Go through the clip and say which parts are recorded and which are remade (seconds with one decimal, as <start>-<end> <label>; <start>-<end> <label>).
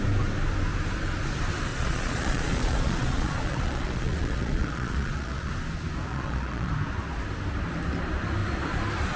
0.0-1.7 recorded; 1.7-5.5 remade; 5.5-6.1 recorded; 6.1-6.7 remade; 6.7-9.2 recorded